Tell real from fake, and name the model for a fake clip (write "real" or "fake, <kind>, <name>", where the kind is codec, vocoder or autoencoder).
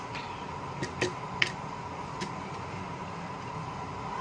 fake, vocoder, BigVGAN v2